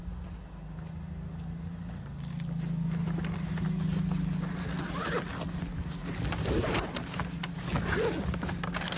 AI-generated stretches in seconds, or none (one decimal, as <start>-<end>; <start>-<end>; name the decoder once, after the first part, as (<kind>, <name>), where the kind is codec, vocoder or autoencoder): 6.0-7.6 (vocoder, BigVGAN v2)